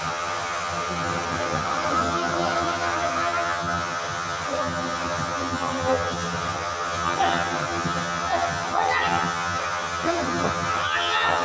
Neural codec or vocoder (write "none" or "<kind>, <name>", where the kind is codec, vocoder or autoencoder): vocoder, HiFi-GAN